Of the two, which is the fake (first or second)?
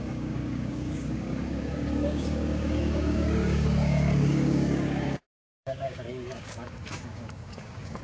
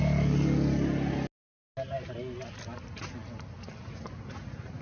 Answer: first